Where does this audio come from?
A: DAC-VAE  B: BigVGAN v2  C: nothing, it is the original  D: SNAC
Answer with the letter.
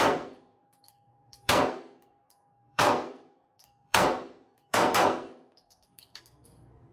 D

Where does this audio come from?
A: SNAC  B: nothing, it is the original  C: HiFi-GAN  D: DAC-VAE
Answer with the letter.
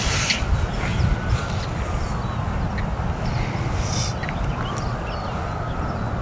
B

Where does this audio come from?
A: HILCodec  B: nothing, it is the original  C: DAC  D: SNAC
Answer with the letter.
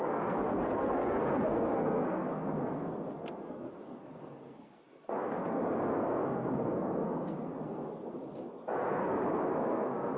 D